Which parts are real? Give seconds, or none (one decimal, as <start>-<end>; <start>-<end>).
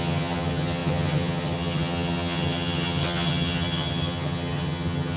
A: none